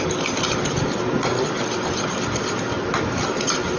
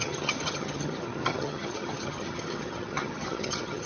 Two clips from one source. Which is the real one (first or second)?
first